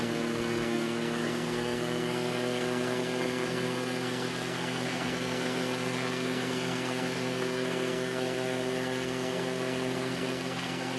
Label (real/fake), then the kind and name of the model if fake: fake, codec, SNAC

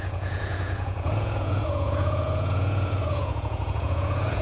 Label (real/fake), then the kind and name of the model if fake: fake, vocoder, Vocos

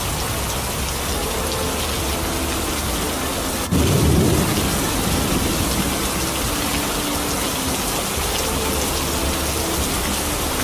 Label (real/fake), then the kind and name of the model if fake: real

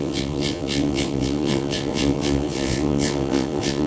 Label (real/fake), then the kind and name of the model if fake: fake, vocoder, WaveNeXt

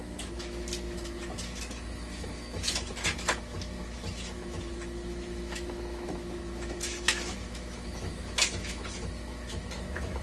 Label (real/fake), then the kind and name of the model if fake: fake, autoencoder, DAC-VAE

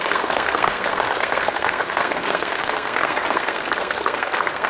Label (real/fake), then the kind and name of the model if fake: fake, codec, SNAC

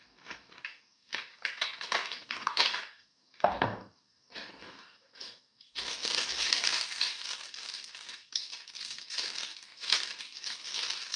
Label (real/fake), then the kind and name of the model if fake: fake, codec, DAC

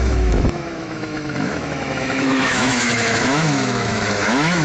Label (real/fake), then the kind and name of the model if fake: fake, autoencoder, DAC-VAE